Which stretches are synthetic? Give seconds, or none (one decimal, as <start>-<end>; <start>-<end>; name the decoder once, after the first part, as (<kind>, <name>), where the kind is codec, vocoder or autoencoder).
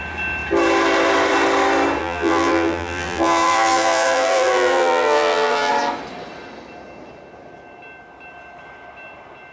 2.0-5.7 (vocoder, BigVGAN v2)